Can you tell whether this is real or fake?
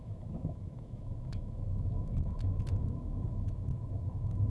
fake